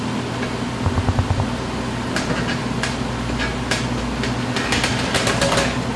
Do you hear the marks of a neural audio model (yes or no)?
no